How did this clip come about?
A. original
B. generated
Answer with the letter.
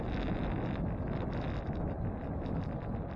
A